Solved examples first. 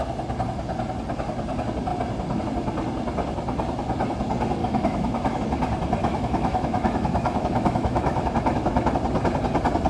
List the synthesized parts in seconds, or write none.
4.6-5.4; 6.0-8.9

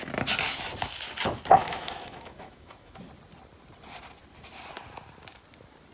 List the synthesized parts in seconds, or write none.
1.6-3.0